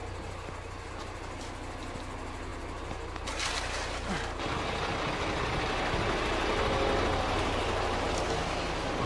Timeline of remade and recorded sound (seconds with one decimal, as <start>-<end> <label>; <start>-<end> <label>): 0.0-9.1 recorded

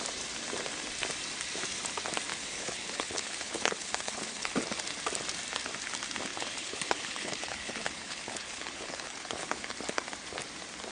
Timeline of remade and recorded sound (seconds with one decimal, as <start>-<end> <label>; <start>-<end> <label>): 0.0-2.3 recorded; 2.3-4.5 remade; 4.5-6.3 recorded; 6.3-9.7 remade; 9.7-10.9 recorded

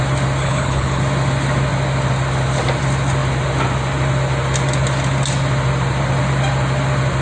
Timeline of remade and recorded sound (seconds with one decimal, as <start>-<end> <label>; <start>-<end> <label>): 0.0-0.4 recorded; 0.4-1.0 remade; 1.0-7.2 recorded

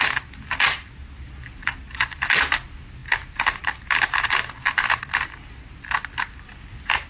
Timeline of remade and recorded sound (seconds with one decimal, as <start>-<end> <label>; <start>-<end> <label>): 0.0-3.0 recorded; 3.0-4.3 remade; 4.3-7.1 recorded